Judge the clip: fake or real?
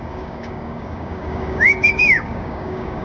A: fake